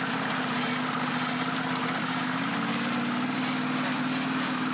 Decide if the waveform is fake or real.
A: real